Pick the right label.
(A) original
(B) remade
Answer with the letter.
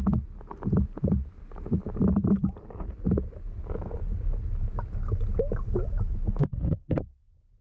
A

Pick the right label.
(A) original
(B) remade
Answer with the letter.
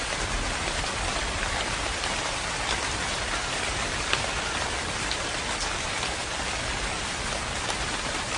A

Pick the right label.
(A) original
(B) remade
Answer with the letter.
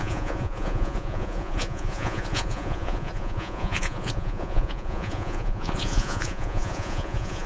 B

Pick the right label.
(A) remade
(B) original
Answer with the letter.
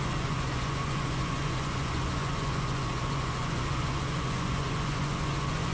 A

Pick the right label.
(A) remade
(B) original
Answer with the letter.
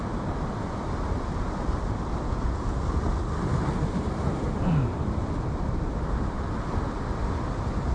B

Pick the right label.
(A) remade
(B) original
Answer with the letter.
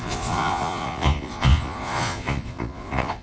A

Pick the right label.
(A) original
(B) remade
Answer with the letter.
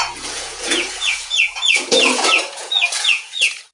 B